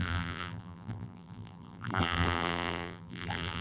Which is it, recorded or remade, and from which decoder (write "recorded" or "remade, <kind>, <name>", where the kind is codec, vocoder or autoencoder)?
remade, vocoder, BigVGAN v2